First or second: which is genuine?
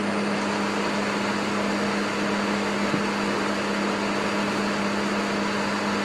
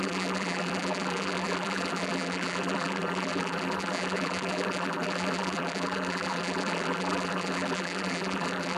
first